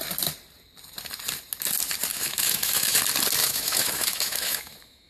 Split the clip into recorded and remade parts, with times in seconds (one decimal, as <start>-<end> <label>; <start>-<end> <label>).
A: 0.0-2.1 recorded; 2.1-3.0 remade; 3.0-3.4 recorded; 3.4-5.1 remade